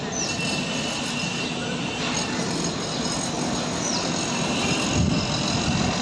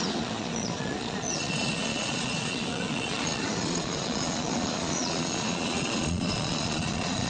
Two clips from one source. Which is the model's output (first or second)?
second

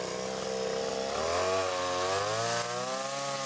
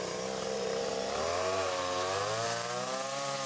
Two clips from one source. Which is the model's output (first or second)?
second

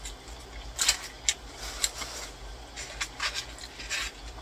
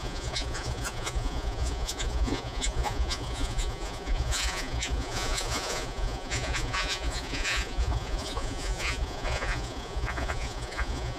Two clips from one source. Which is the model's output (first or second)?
second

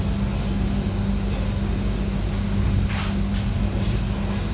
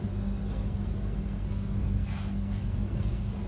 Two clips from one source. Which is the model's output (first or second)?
second